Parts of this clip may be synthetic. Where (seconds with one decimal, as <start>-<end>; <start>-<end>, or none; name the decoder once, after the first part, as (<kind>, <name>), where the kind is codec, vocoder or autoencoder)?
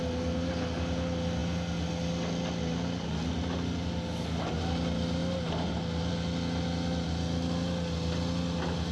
none